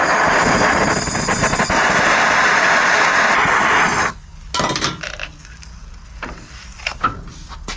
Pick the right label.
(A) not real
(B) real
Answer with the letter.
B